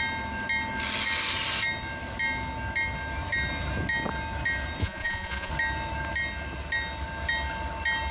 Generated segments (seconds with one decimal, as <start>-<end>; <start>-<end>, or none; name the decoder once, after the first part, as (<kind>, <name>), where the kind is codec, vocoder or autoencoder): 4.8-5.5 (vocoder, Vocos)